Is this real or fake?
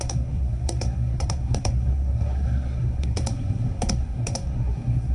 fake